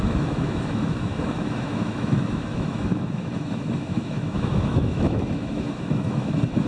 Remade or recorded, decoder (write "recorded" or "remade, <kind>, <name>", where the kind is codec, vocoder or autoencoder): remade, autoencoder, DAC-VAE